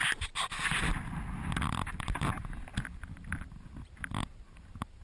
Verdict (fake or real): real